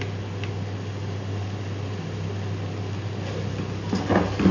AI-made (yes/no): no